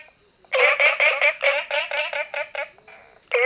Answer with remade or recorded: recorded